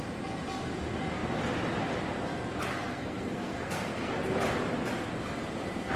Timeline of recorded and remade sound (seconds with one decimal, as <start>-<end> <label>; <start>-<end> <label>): 0.0-2.7 recorded; 2.7-4.1 remade; 4.1-6.0 recorded